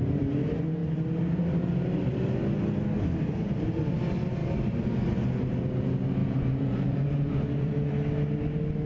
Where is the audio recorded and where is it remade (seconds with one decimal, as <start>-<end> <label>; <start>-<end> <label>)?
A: 0.0-6.2 recorded; 6.2-7.9 remade; 7.9-8.9 recorded